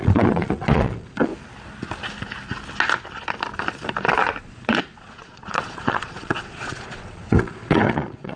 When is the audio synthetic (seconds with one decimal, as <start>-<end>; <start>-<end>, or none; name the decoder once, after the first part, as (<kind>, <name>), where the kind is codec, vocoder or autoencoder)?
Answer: 0.0-1.3 (vocoder, Vocos); 4.4-8.4